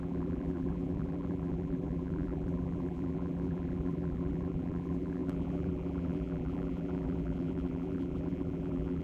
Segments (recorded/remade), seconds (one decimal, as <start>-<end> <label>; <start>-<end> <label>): 0.0-9.0 remade